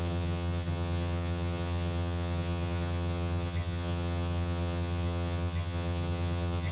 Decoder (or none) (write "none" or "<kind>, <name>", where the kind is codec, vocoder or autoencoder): vocoder, HiFi-GAN